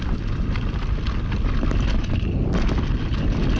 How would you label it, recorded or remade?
recorded